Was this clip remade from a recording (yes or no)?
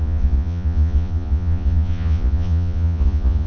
yes